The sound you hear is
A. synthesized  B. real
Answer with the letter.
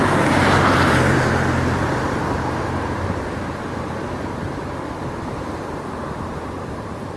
A